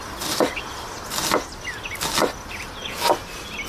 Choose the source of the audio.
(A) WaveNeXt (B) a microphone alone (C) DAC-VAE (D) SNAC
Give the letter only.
B